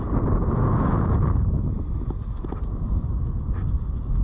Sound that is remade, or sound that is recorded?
recorded